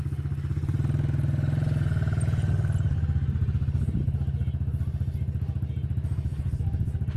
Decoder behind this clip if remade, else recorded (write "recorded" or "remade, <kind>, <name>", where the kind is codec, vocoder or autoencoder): recorded